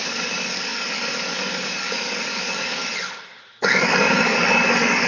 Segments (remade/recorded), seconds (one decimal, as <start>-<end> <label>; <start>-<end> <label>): 0.0-2.8 remade; 2.8-3.5 recorded; 3.5-5.1 remade